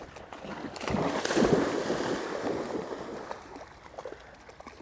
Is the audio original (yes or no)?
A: yes